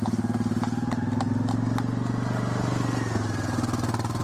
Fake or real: real